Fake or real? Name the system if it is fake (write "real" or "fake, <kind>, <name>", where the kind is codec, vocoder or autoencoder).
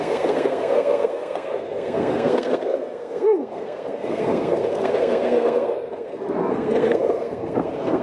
fake, codec, SNAC